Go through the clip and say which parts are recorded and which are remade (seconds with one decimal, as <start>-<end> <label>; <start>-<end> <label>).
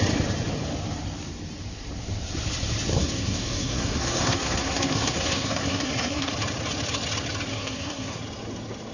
0.0-2.9 recorded; 2.9-6.3 remade; 6.3-7.5 recorded; 7.5-8.2 remade; 8.2-8.9 recorded